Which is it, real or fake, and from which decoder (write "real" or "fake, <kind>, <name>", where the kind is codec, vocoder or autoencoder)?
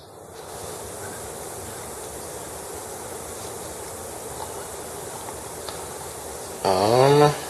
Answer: real